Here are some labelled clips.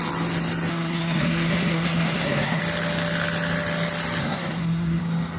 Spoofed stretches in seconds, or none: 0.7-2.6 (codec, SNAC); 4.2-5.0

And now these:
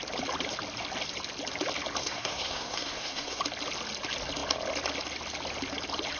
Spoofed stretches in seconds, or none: 2.0-3.4 (codec, SNAC)

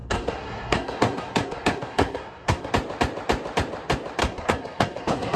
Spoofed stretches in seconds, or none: 0.0-2.7 (codec, SNAC); 4.2-5.4

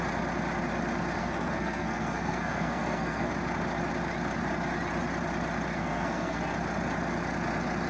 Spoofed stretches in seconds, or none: 1.2-3.3 (codec, SNAC); 5.7-6.4

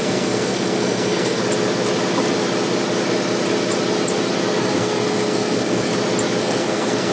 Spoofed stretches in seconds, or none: 0.0-1.4 (codec, SNAC); 4.6-5.9; 6.4-7.1

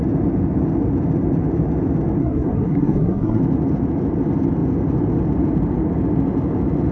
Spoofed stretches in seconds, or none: 2.2-3.4 (codec, SNAC)

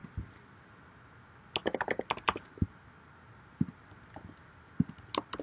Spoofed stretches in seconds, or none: none

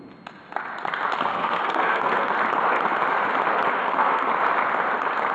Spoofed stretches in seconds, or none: 1.3-2.3 (codec, SNAC); 3.8-4.3